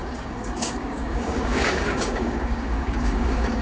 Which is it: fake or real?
fake